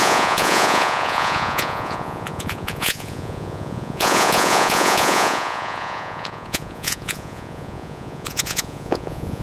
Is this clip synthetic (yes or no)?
yes